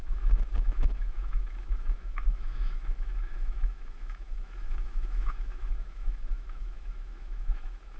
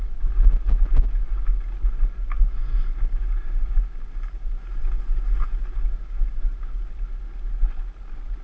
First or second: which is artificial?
first